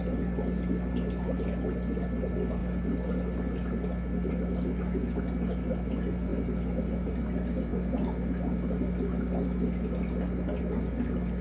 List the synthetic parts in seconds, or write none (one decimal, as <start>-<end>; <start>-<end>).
none